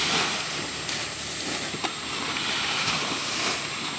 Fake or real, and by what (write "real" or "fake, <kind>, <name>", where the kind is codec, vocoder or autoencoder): real